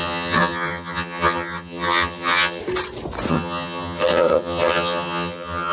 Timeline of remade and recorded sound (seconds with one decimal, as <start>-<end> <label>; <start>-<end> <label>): 0.0-2.6 remade; 2.6-3.3 recorded; 3.3-5.7 remade